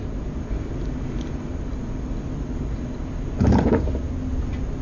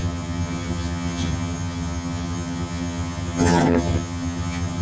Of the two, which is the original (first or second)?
first